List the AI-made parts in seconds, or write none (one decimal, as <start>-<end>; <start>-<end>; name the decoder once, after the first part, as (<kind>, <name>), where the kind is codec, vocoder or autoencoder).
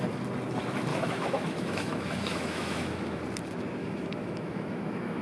0.9-3.2 (autoencoder, DAC-VAE); 3.8-5.2